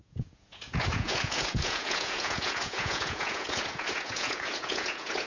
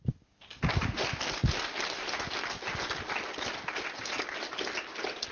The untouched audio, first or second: second